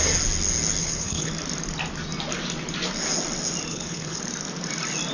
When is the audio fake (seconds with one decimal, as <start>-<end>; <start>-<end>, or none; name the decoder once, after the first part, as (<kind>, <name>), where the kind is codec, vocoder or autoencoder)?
0.8-1.3 (codec, HILCodec); 3.7-4.2